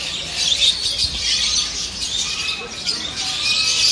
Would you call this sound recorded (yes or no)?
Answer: yes